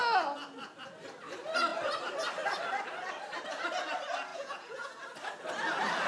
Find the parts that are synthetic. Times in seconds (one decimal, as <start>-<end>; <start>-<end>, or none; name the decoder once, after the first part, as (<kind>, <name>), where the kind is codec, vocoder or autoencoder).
4.3-4.9 (vocoder, Vocos)